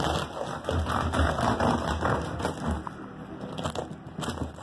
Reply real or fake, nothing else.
real